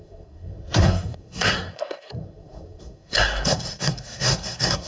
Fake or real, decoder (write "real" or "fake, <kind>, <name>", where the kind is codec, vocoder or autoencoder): fake, codec, SNAC